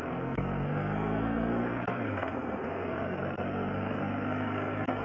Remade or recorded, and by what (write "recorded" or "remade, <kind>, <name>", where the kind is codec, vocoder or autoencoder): remade, codec, SNAC